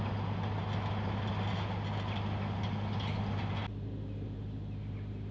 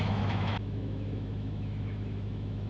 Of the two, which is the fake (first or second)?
second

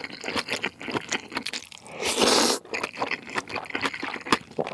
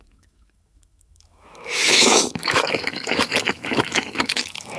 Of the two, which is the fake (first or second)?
second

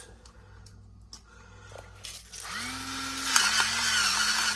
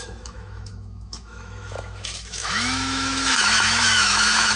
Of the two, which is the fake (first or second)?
second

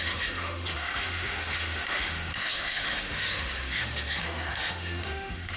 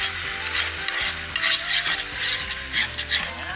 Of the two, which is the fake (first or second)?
first